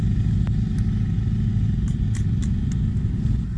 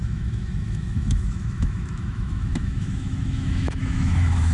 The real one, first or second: first